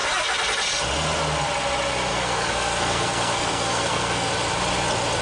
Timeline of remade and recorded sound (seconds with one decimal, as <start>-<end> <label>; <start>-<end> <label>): 0.0-2.1 recorded; 2.1-4.3 remade; 4.3-5.2 recorded